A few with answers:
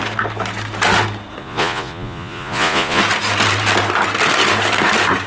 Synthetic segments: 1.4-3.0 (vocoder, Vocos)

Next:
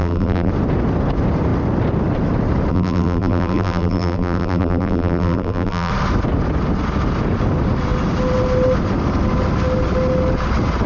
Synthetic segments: 0.0-0.5 (vocoder, BigVGAN v2); 2.7-5.9